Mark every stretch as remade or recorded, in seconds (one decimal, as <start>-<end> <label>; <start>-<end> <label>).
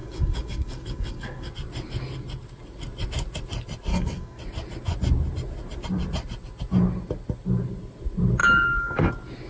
0.0-1.5 remade; 1.5-3.9 recorded; 3.9-4.4 remade; 4.4-8.4 recorded; 8.4-9.1 remade; 9.1-9.5 recorded